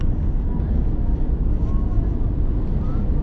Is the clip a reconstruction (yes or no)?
no